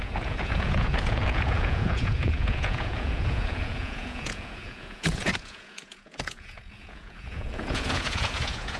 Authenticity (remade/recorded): remade